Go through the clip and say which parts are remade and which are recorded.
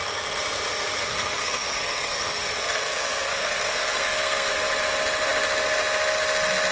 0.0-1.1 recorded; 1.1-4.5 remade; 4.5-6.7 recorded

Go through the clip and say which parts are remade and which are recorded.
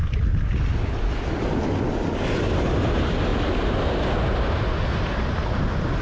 0.0-6.0 recorded